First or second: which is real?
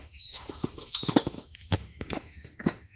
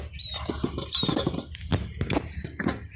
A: second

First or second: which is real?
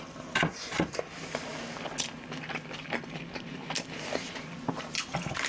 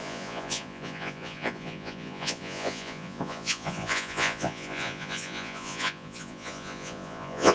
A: first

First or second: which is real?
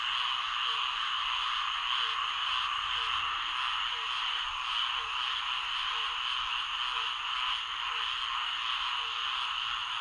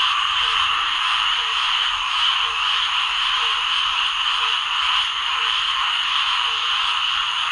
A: first